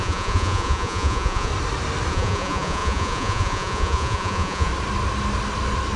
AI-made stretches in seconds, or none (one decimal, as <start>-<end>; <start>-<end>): 0.0-1.5; 2.1-4.7